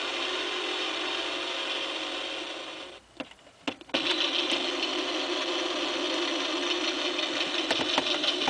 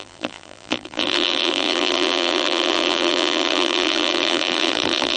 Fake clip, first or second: second